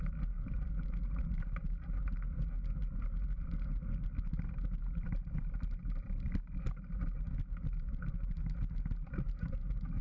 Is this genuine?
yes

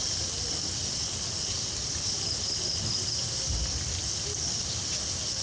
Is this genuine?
yes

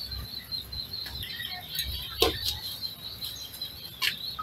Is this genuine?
yes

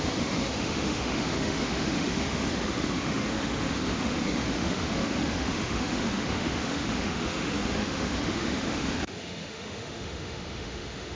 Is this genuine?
no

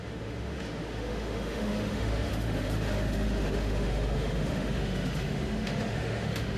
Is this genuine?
no